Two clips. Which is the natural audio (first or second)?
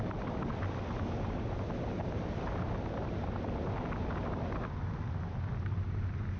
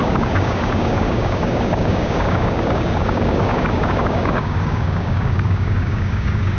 first